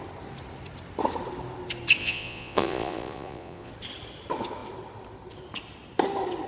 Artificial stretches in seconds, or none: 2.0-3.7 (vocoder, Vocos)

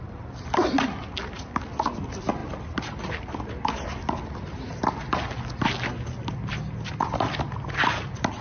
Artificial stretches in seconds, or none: none